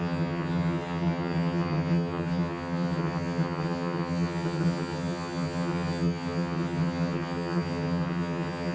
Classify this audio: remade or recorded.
remade